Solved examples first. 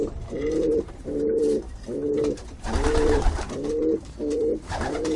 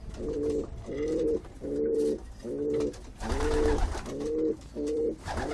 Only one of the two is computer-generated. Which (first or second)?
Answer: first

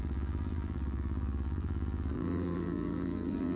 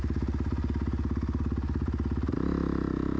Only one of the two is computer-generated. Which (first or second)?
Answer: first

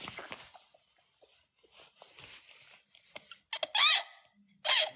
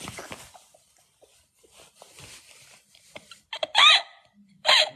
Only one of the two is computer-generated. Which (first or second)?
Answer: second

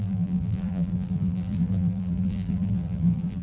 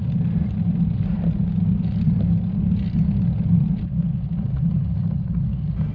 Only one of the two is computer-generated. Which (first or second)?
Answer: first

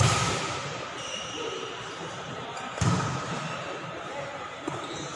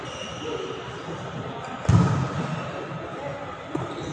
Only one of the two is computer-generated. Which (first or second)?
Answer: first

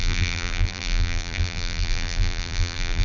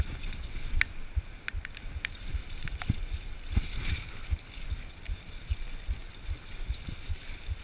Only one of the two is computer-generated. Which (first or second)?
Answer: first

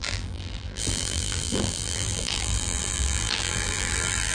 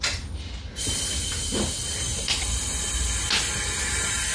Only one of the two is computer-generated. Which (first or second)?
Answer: first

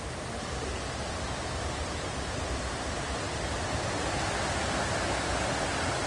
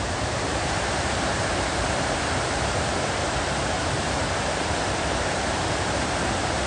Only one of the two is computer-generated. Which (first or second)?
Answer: second